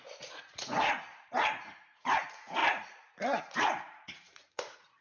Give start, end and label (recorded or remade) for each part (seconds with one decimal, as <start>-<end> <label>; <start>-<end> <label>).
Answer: 0.0-2.6 remade; 2.6-3.4 recorded; 3.4-5.0 remade